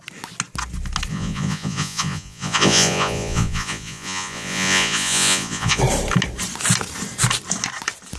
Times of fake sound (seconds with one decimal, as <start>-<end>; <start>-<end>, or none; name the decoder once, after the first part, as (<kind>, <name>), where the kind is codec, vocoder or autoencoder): 1.1-5.8 (vocoder, Vocos)